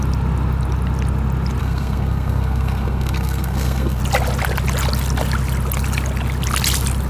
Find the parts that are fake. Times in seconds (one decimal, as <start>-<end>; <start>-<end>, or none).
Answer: 1.6-4.0